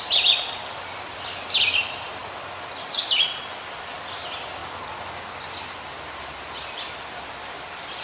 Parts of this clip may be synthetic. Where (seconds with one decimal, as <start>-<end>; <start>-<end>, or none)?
0.0-2.2; 3.9-4.6; 7.6-8.0